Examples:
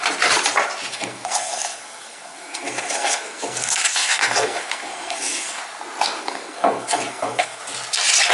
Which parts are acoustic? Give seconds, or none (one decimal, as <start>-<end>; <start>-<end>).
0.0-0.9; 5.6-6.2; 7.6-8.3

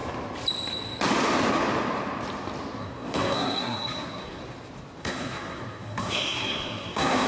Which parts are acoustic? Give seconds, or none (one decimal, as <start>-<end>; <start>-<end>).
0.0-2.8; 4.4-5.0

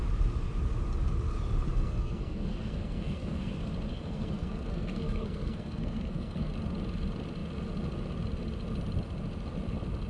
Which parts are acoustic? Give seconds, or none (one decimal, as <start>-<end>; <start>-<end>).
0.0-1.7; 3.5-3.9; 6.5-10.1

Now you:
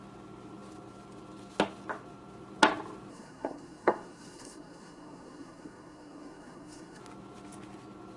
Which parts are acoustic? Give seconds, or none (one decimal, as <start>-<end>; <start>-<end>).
0.0-3.1; 7.0-8.2

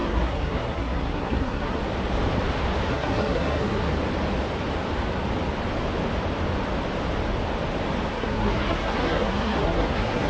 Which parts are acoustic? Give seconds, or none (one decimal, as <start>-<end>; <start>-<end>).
1.8-2.9; 3.9-8.1